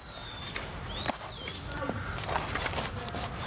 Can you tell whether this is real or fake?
real